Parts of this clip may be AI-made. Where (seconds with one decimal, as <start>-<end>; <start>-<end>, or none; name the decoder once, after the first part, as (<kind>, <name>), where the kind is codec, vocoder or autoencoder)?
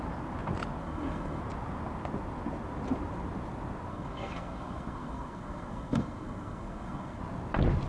0.8-1.4 (codec, SNAC); 3.9-7.2